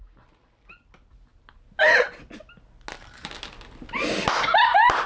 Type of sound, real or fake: real